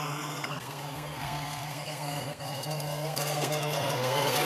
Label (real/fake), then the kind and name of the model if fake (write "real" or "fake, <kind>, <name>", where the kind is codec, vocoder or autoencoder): fake, codec, SNAC